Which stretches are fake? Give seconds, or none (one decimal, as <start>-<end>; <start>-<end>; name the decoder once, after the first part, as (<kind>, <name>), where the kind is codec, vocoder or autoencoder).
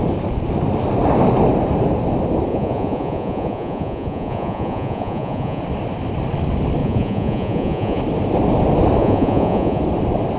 2.5-5.6 (vocoder, Vocos); 6.8-8.0; 9.0-9.8